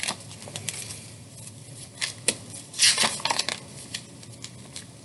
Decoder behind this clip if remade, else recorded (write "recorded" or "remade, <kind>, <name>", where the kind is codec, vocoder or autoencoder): recorded